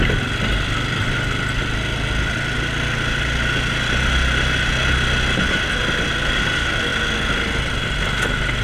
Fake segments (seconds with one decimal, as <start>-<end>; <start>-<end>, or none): none